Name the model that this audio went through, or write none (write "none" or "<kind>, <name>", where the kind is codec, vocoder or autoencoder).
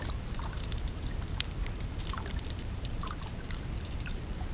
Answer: vocoder, BigVGAN v2